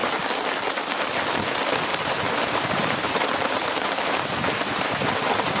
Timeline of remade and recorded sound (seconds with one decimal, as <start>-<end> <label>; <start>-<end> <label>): 0.0-1.9 recorded; 1.9-5.6 remade